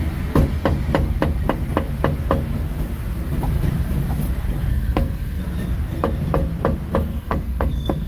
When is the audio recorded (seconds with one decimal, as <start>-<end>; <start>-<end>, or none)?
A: 0.0-4.7; 5.4-7.1